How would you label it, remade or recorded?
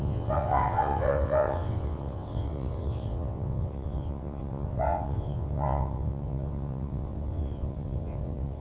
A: remade